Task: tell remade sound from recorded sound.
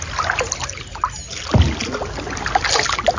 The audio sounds recorded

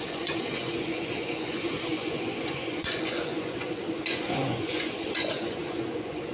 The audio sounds remade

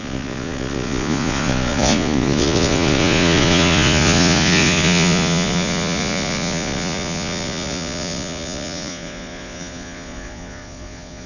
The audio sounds remade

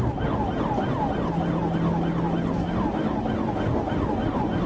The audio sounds recorded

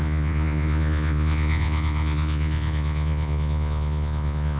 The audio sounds remade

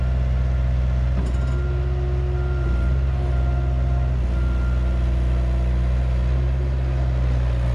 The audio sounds recorded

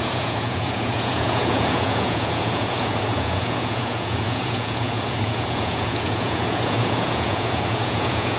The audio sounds remade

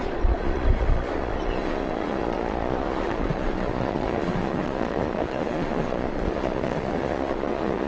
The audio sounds remade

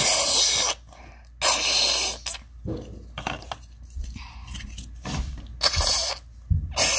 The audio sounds recorded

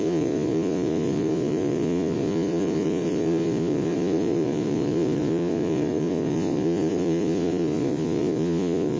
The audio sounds remade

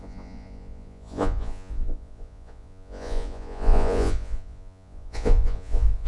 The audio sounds remade